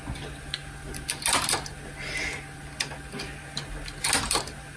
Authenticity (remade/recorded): recorded